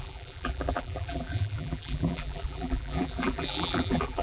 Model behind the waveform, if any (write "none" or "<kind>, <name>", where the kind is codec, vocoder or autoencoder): vocoder, BigVGAN v2